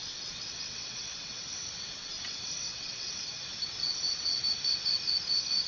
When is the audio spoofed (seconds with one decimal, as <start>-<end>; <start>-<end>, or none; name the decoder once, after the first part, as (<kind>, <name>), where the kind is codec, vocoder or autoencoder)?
0.0-3.4 (vocoder, WaveNeXt); 3.8-4.4